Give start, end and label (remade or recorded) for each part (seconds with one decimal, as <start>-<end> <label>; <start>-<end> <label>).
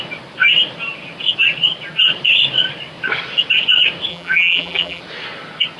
0.0-4.1 recorded; 4.1-5.0 remade; 5.0-5.8 recorded